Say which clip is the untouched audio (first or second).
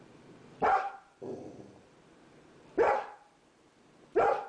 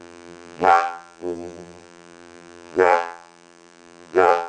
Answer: first